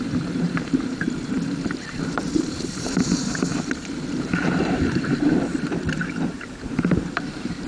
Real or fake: fake